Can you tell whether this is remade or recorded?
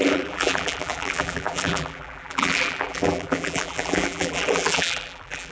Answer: remade